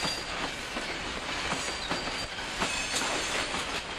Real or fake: real